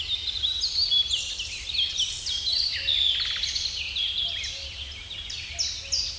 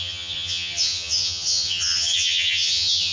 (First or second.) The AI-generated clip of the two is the second